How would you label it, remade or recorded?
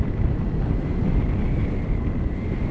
recorded